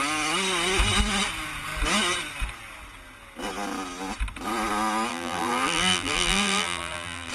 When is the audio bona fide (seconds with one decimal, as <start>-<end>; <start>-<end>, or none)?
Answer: 0.0-5.1